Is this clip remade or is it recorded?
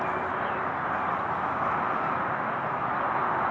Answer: recorded